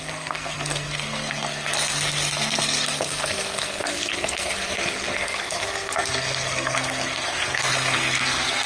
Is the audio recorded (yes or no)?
no